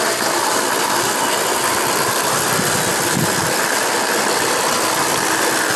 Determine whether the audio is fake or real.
real